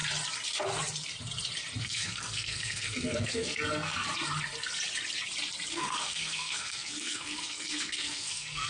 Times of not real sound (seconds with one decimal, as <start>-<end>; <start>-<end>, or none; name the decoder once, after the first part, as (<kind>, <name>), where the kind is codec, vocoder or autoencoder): 1.8-4.1 (codec, SNAC); 5.7-8.7